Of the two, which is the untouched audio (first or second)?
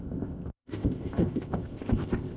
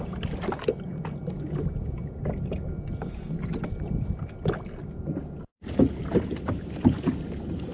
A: second